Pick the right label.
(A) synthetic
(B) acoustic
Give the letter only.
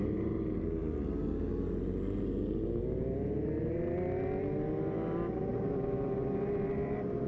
B